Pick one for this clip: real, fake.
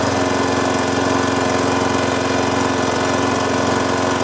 real